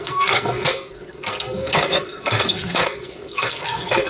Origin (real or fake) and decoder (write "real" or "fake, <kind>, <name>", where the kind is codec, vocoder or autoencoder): fake, codec, SNAC